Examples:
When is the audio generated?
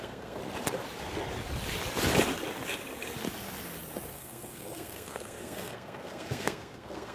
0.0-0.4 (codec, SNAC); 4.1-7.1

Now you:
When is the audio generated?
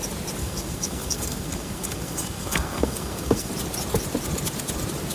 0.4-3.5 (codec, SNAC)